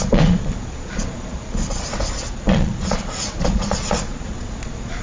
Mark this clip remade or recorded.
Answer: remade